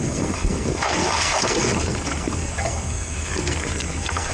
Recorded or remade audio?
remade